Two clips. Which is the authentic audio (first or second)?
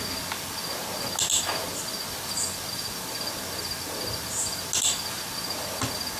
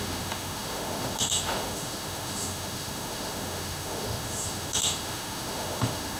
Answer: first